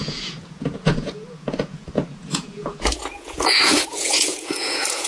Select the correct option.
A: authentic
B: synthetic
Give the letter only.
B